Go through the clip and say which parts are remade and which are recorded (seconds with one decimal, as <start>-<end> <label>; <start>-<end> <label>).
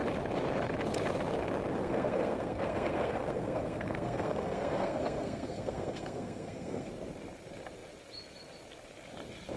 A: 0.0-1.7 recorded; 1.7-6.9 remade; 6.9-9.6 recorded